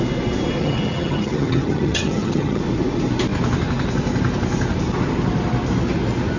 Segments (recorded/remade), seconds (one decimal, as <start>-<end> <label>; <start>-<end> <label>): 0.0-0.6 recorded; 0.6-2.6 remade; 2.6-6.4 recorded